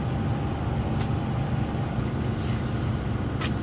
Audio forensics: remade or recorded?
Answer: recorded